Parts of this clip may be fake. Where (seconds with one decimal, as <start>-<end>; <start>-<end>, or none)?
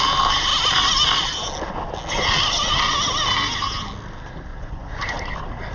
4.5-5.0